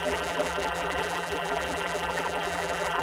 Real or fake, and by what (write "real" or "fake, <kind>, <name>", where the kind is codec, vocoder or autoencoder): fake, vocoder, BigVGAN v2